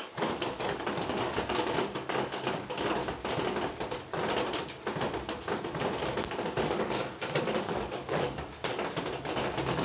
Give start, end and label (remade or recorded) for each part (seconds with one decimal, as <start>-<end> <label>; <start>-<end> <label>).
0.0-3.0 remade; 3.0-6.7 recorded; 6.7-8.7 remade; 8.7-9.8 recorded